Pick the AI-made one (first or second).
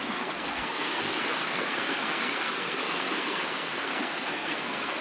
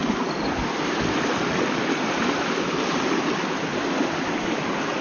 first